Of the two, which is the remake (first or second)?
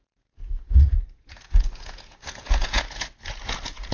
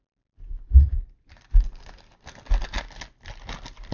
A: first